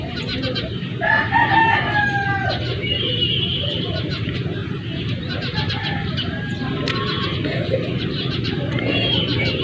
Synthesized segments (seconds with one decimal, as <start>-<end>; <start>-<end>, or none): 0.0-1.2; 3.1-4.6; 5.2-9.6